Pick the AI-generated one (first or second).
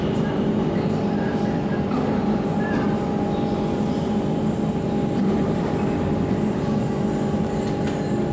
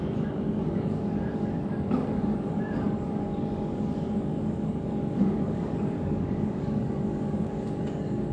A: second